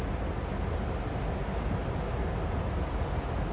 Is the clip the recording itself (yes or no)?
yes